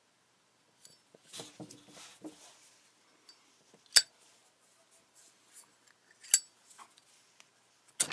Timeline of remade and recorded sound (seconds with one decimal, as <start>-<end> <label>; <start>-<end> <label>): 0.0-8.1 recorded